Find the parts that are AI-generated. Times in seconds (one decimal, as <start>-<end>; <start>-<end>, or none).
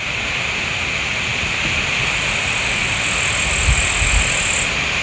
none